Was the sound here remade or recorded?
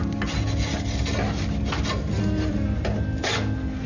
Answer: recorded